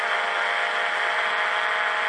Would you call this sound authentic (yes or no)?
yes